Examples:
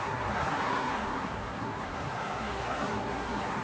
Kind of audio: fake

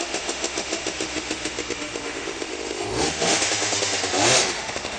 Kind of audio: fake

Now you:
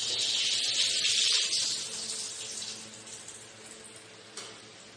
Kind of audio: real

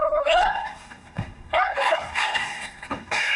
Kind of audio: fake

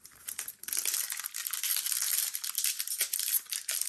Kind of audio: fake